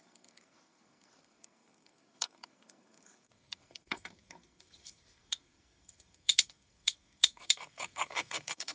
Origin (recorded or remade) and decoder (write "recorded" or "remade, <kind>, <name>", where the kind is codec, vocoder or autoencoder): remade, codec, SNAC